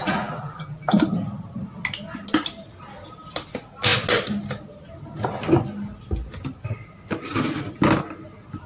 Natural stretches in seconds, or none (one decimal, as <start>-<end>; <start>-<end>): 1.1-8.7